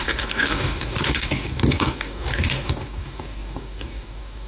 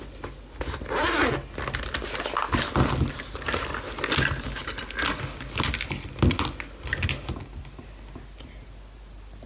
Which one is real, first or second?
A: second